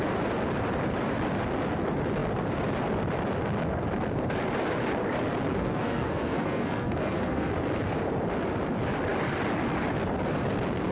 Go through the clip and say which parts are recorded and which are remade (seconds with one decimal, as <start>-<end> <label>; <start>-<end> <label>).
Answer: 0.0-5.5 recorded; 5.5-7.5 remade; 7.5-10.9 recorded